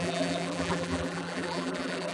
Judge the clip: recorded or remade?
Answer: remade